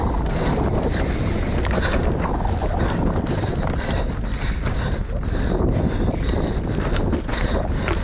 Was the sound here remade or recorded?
recorded